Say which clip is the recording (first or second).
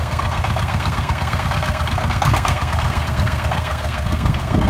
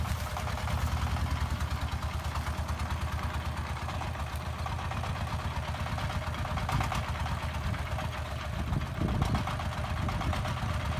second